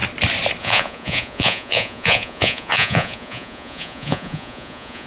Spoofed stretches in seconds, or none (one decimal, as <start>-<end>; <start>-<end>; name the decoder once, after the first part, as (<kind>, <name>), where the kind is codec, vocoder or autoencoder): 0.6-5.1 (vocoder, Vocos)